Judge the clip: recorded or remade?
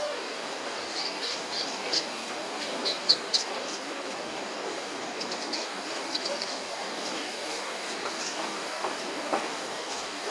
remade